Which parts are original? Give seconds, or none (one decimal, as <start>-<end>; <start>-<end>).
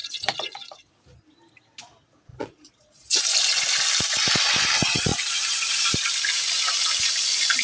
0.9-2.3; 3.2-5.1; 5.7-7.6